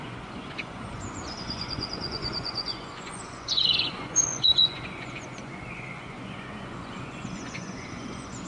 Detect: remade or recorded remade